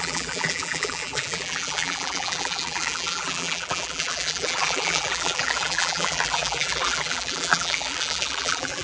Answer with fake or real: fake